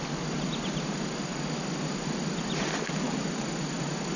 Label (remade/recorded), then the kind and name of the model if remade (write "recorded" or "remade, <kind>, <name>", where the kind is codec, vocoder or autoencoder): recorded